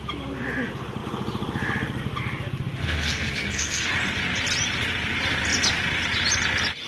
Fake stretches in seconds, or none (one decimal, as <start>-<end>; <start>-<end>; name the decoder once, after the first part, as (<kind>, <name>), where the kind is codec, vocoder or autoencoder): 2.8-3.9 (codec, SNAC)